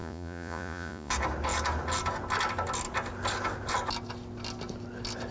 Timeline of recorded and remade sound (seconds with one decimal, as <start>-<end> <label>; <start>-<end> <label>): 0.0-1.1 remade; 1.1-5.3 recorded